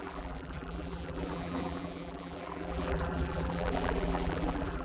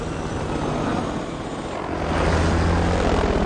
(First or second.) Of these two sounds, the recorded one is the second